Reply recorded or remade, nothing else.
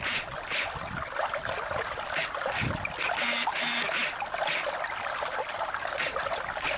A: recorded